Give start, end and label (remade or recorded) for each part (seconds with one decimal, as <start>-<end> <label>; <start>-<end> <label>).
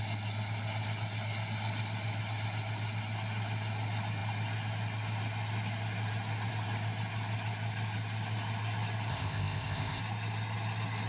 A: 0.0-9.1 recorded; 9.1-10.0 remade; 10.0-11.1 recorded